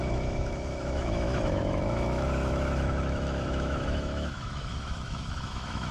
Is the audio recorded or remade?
remade